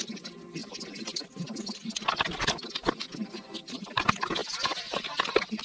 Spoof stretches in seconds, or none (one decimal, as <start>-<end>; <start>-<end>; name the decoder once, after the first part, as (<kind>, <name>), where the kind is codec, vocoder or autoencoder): none